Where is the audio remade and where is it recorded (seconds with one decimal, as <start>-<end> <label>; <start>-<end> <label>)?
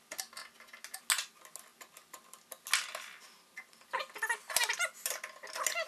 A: 0.0-5.9 recorded